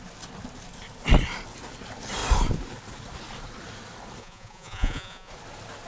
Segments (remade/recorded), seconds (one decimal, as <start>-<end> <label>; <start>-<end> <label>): 0.0-4.2 recorded; 4.2-5.3 remade; 5.3-5.9 recorded